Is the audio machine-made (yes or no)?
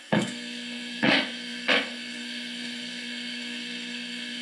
yes